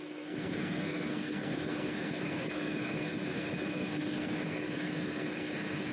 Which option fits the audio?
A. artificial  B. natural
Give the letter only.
A